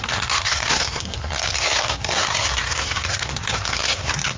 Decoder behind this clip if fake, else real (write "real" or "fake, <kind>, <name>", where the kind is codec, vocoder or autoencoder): fake, codec, SNAC